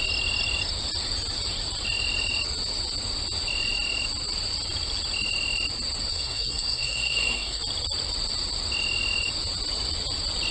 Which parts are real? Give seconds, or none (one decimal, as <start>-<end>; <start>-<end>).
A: 0.0-6.1; 7.6-10.5